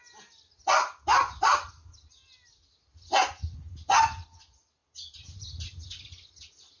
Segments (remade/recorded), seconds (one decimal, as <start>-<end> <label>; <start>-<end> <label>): 0.0-6.8 recorded

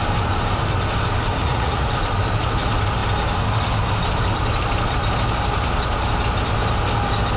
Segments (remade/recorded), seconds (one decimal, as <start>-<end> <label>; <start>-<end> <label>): 0.0-1.4 recorded; 1.4-1.9 remade; 1.9-7.4 recorded

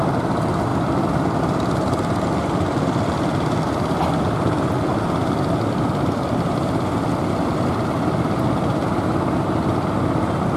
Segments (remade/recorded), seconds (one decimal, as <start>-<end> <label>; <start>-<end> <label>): 0.0-10.6 recorded